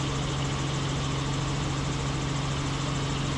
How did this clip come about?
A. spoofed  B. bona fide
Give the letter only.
B